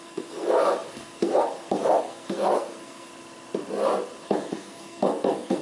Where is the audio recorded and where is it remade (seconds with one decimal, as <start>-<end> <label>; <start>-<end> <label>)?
0.0-3.1 remade; 3.1-4.2 recorded; 4.2-5.6 remade